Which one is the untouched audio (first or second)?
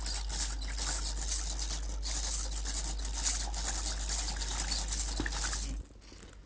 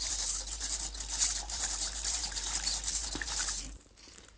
first